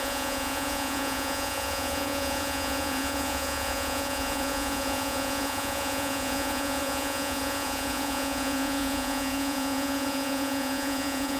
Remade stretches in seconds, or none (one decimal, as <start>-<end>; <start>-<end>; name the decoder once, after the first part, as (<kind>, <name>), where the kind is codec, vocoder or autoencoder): 0.0-11.4 (vocoder, Vocos)